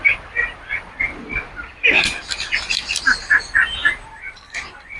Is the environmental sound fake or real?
real